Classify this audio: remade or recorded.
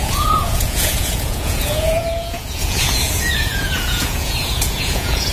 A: remade